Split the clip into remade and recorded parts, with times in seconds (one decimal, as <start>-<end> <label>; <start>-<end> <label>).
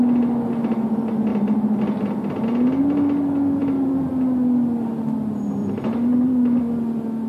0.0-1.3 recorded; 1.3-1.8 remade; 1.8-3.6 recorded; 3.6-4.1 remade; 4.1-5.6 recorded; 5.6-6.6 remade; 6.6-7.3 recorded